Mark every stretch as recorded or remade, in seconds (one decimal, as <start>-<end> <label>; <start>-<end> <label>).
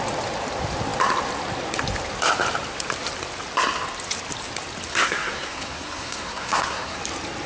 0.0-4.9 recorded; 4.9-7.0 remade; 7.0-7.5 recorded